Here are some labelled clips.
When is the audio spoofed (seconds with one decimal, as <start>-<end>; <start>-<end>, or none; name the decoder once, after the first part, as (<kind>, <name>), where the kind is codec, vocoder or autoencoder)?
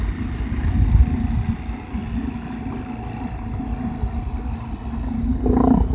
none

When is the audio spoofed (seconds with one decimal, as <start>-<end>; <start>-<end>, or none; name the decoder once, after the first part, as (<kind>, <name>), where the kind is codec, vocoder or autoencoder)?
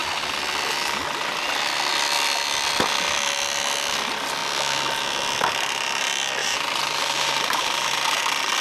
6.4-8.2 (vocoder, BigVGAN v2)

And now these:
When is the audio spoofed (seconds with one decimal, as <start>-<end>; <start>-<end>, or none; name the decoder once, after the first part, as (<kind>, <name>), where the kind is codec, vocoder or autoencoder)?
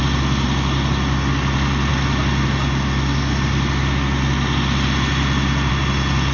none